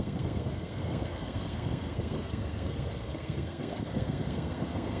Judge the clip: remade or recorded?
remade